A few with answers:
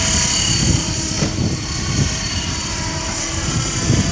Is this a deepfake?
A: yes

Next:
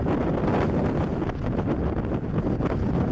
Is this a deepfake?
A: no